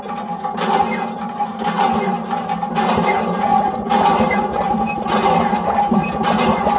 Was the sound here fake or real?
real